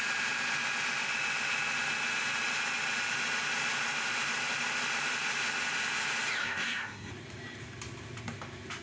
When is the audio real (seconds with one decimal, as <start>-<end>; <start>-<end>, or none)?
0.0-6.4; 7.1-8.8